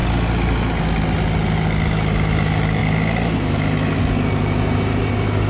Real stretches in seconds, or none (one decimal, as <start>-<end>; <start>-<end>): 0.0-5.5